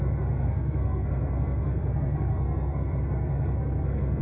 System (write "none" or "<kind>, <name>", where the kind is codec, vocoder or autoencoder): codec, SNAC